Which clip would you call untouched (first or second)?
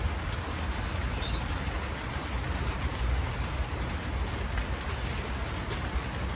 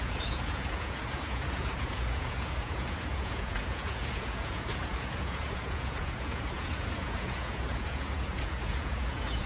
first